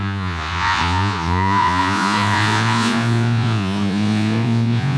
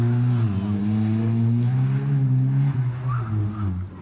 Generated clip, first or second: first